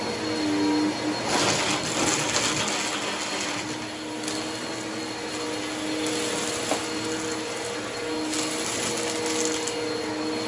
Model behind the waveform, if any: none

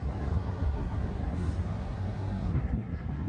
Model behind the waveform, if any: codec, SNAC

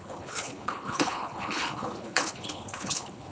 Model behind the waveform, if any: codec, HILCodec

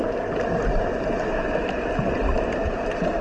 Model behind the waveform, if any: none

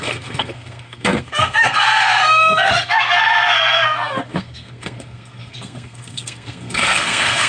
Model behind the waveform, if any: codec, SNAC